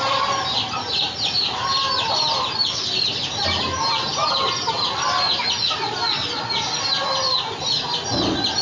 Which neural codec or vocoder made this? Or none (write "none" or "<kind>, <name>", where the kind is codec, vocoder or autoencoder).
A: none